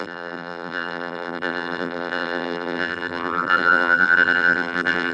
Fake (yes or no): yes